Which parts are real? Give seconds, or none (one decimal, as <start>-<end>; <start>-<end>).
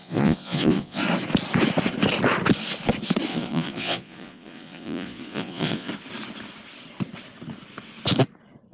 1.0-3.3; 5.9-8.7